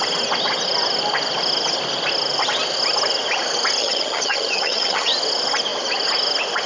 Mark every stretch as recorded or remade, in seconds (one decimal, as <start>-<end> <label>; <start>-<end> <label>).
0.0-3.8 recorded; 3.8-5.1 remade; 5.1-6.7 recorded